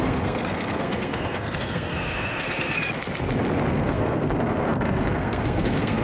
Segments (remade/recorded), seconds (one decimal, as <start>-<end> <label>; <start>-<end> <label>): 0.0-2.8 remade; 2.8-3.7 recorded; 3.7-6.0 remade